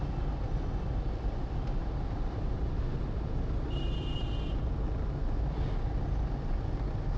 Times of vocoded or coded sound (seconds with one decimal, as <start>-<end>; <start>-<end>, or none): 1.8-4.8